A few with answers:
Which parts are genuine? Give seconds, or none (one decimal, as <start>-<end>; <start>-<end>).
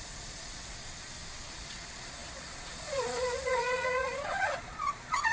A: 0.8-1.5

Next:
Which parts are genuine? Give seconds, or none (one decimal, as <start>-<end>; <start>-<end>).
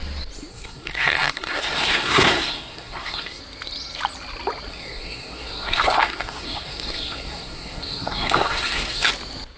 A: 0.0-0.5; 3.4-4.7; 9.1-9.6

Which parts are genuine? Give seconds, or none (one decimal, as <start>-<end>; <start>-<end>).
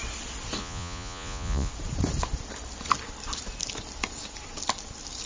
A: 0.0-0.6; 1.7-5.3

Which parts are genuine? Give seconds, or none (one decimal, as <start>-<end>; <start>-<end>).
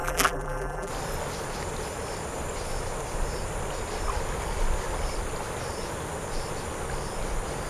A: 0.9-7.7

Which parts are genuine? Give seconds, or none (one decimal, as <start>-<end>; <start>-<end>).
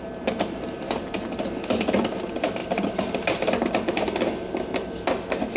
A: 0.0-5.6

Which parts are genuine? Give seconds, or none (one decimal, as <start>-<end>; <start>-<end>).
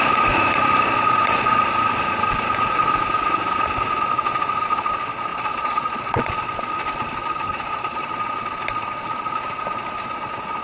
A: 0.0-5.3; 6.3-7.5; 8.1-10.6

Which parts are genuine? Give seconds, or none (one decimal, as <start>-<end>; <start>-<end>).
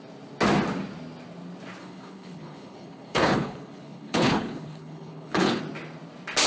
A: 0.0-1.8; 5.6-6.5